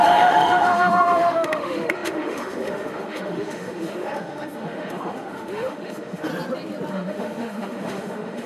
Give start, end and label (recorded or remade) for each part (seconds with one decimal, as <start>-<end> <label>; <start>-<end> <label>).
0.0-6.3 remade; 6.3-6.9 recorded; 6.9-8.5 remade